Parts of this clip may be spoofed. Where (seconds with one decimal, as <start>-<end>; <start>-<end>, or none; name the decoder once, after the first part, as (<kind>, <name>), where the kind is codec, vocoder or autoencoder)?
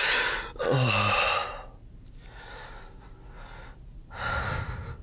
1.4-3.1 (vocoder, BigVGAN v2)